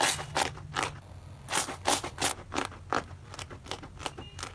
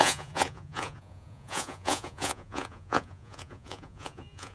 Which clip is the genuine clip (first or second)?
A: first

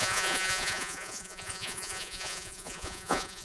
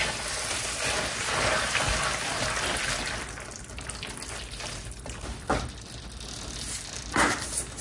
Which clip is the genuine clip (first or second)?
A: second